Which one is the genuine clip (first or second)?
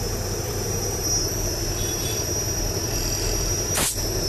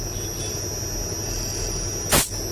second